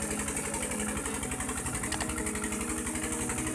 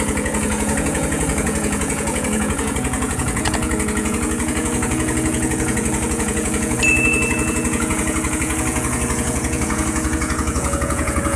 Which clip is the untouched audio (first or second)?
first